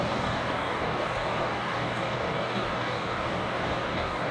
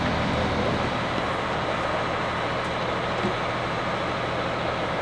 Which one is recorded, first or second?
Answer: second